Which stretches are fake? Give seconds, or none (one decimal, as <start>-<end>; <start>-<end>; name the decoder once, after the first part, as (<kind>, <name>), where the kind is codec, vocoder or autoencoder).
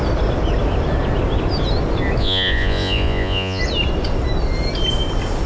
2.2-3.6 (vocoder, Vocos)